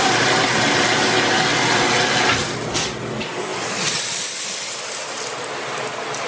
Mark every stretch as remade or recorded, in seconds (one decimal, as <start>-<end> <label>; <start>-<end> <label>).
0.0-6.3 recorded

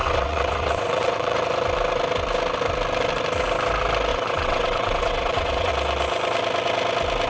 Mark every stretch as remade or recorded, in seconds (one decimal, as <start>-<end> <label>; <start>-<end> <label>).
0.0-1.4 remade; 1.4-4.1 recorded; 4.1-5.7 remade; 5.7-7.3 recorded

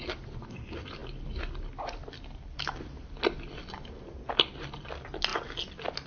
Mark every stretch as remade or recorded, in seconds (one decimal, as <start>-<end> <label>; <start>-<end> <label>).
0.0-6.1 recorded

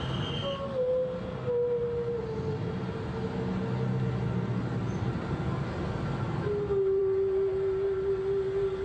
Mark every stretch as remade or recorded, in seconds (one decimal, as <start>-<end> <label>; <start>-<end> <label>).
0.0-8.8 recorded

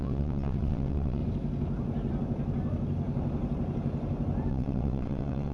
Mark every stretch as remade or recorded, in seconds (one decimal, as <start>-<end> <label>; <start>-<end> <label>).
0.0-1.2 remade; 1.2-4.5 recorded; 4.5-5.5 remade

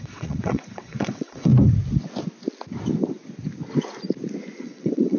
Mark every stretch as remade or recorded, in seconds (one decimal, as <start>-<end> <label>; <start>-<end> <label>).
0.0-1.5 remade; 1.5-4.6 recorded; 4.6-5.2 remade

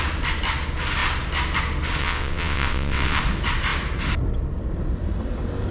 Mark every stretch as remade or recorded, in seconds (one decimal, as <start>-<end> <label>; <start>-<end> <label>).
0.0-2.0 recorded; 2.0-3.2 remade; 3.2-5.7 recorded